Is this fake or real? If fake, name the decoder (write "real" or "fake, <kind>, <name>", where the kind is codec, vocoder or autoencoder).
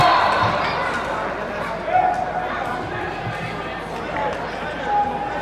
real